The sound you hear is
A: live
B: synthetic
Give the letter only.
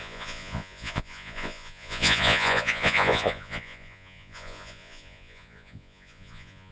B